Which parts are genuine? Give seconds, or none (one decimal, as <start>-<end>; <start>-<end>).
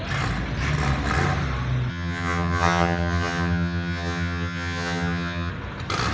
0.0-1.9; 5.5-6.1